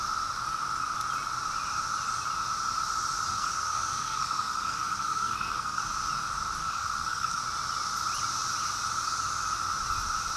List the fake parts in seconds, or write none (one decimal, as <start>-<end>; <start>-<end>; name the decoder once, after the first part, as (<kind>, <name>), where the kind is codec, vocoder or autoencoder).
3.3-5.8 (codec, SNAC); 6.6-7.4